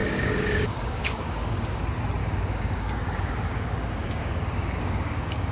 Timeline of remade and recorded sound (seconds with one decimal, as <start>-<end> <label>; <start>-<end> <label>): 0.0-1.8 remade; 1.8-2.2 recorded; 2.2-5.5 remade